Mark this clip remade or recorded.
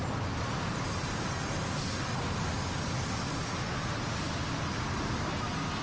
recorded